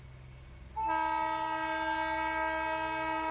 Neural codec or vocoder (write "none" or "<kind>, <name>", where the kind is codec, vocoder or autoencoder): none